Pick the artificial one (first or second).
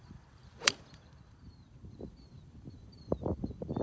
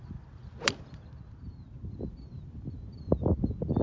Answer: first